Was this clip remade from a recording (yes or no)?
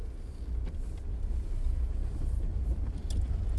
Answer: no